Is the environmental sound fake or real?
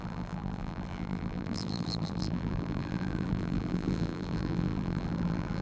fake